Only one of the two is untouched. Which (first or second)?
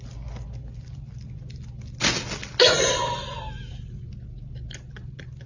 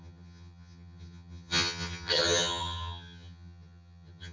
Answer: first